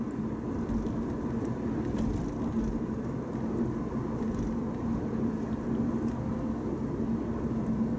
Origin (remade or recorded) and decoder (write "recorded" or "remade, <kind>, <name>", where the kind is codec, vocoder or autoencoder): recorded